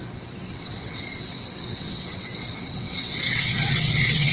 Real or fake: fake